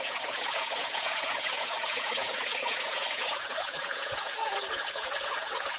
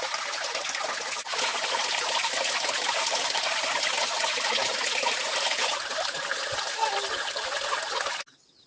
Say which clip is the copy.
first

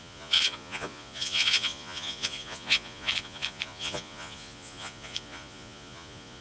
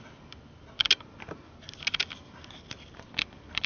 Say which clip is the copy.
first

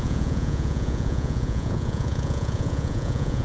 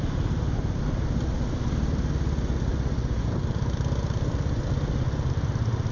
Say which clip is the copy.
first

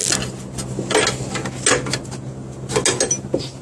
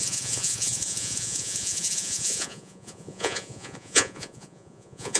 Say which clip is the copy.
second